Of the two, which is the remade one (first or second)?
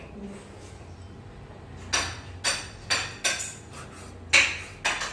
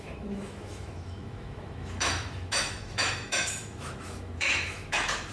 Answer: second